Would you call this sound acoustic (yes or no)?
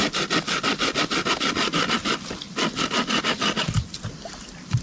yes